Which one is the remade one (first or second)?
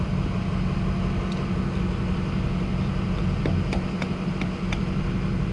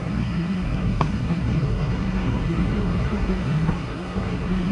second